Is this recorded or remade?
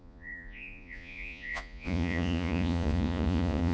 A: remade